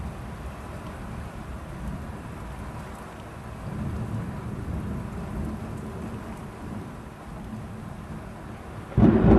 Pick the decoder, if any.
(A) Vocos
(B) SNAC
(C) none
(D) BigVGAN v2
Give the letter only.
C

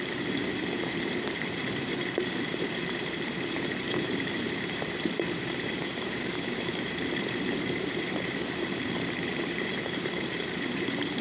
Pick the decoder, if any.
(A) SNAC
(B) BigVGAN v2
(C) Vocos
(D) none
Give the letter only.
B